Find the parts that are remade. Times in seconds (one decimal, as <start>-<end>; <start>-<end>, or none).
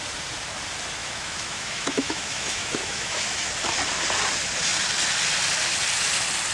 1.0-3.5